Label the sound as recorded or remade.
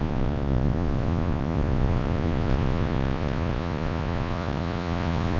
remade